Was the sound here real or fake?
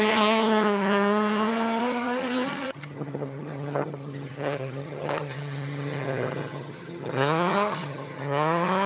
fake